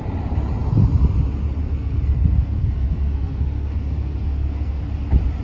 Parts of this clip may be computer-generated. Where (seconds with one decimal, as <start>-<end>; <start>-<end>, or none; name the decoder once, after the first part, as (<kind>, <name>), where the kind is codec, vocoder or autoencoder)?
1.6-4.8 (codec, SNAC)